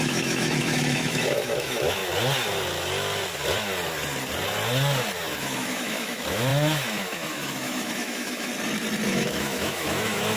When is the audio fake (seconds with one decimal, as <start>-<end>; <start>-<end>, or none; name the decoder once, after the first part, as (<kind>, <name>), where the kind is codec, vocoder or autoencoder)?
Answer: 0.0-2.0 (autoencoder, DAC-VAE); 5.4-8.5; 9.1-10.4

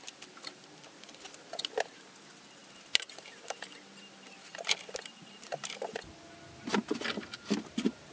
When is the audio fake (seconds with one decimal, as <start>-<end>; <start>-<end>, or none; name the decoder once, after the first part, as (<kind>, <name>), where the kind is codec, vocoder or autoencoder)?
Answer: none

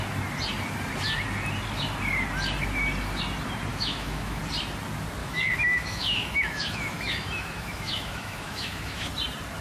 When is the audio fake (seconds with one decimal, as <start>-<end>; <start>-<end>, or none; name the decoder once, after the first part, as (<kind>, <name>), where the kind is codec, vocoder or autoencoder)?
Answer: 3.7-4.4 (autoencoder, DAC-VAE); 5.2-9.1

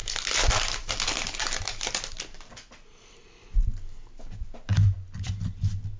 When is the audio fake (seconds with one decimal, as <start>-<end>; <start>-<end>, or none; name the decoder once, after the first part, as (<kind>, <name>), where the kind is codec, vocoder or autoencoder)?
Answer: none

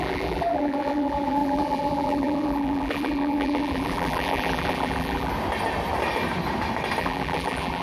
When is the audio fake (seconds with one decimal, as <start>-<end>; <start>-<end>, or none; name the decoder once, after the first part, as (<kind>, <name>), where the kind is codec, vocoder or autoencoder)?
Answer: 0.0-5.3 (vocoder, BigVGAN v2); 7.0-7.8

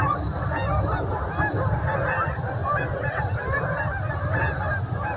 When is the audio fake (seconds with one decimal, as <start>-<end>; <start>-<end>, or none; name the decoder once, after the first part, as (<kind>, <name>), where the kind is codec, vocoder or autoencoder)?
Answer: 2.6-4.2 (vocoder, BigVGAN v2)

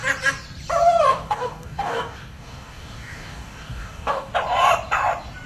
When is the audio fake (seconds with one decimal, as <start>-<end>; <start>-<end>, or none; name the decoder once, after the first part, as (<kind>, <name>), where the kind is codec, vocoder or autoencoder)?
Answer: 1.1-4.3 (codec, DAC)

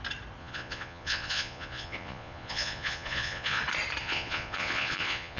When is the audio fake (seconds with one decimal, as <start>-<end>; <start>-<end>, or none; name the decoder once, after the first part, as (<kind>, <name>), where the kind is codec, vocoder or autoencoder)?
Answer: 0.4-3.6 (vocoder, Vocos); 4.0-5.4